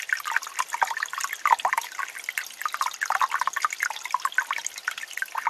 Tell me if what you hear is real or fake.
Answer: real